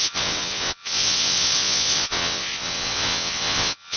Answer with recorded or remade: remade